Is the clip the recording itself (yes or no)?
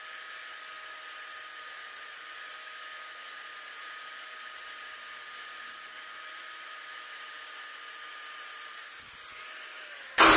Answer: yes